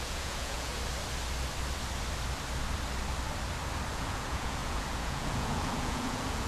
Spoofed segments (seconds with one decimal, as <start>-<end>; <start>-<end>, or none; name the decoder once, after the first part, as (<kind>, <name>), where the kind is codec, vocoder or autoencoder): 0.0-0.7 (vocoder, Vocos); 3.9-6.5